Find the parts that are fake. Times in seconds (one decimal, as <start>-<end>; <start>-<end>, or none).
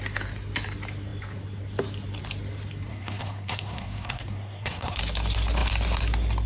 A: 2.9-5.0